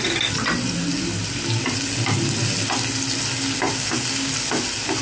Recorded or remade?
recorded